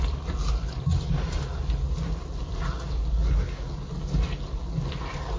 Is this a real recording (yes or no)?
yes